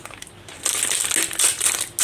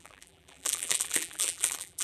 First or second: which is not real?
second